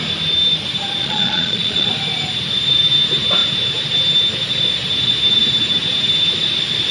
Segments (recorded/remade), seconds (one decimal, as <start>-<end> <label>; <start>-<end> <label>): 0.0-1.0 recorded; 1.0-1.9 remade; 1.9-6.9 recorded